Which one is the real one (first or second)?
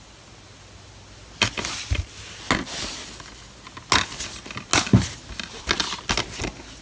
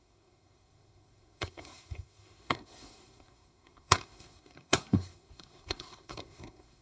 first